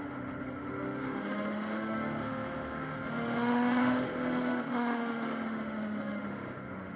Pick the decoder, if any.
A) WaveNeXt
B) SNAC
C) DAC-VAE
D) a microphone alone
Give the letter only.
C